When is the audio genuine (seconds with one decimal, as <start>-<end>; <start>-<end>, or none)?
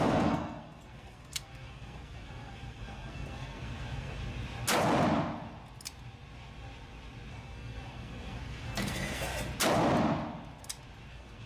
4.2-7.3; 9.3-11.1